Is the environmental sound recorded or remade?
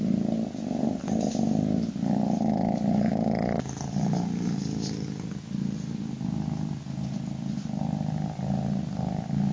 recorded